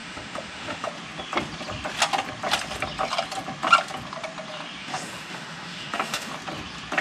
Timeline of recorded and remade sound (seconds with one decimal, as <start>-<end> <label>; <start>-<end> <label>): 0.0-0.9 remade; 0.9-4.8 recorded; 4.8-6.3 remade; 6.3-7.0 recorded